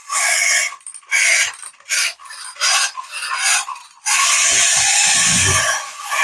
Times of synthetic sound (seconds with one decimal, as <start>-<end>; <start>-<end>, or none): 0.0-0.8; 2.5-6.2